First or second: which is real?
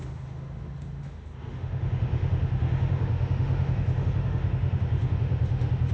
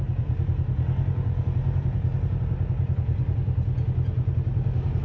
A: second